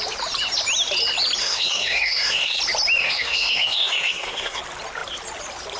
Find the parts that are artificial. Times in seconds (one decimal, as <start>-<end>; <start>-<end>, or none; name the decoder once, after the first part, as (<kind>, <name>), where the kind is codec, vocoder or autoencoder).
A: 1.4-2.6 (codec, SNAC); 3.0-4.6